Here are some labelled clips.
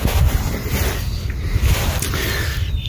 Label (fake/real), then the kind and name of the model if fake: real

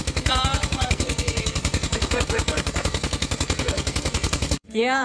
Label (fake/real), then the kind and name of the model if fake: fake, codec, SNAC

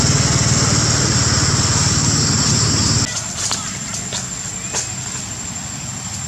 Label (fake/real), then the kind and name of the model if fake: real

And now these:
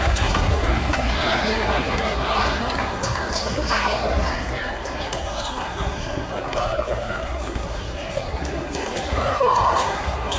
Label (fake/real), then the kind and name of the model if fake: fake, codec, SNAC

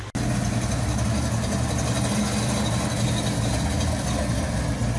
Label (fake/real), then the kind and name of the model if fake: real